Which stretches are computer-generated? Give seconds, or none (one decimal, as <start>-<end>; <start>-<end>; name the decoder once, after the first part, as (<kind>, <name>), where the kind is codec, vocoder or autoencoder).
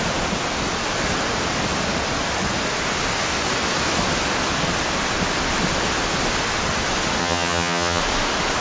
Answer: 7.2-8.0 (vocoder, HiFi-GAN)